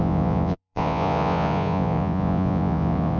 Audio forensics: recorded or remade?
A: remade